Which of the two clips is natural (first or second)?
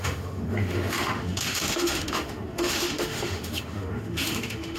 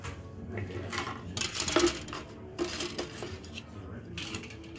second